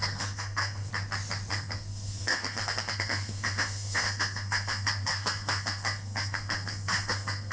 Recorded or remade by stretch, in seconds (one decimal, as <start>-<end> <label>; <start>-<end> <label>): 0.0-0.9 remade; 0.9-1.5 recorded; 1.5-7.5 remade